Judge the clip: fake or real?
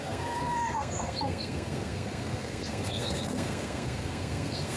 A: fake